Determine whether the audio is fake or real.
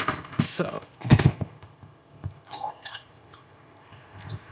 fake